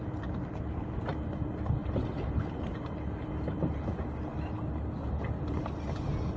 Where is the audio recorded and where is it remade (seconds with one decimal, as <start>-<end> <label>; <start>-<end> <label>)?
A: 0.0-6.4 recorded